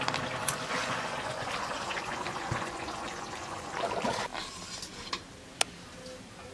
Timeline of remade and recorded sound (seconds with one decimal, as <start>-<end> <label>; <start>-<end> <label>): 0.0-0.4 recorded; 0.4-3.7 remade; 3.7-6.5 recorded